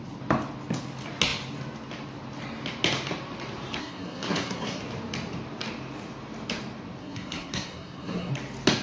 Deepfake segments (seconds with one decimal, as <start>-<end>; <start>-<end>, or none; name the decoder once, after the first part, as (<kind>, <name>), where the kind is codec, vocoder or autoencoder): 3.8-4.8 (codec, SNAC); 7.0-8.3